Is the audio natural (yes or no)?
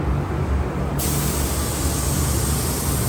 yes